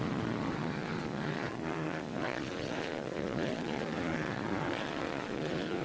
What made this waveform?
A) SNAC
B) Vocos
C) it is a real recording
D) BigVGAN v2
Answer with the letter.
B